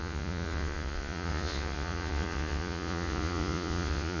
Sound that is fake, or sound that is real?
fake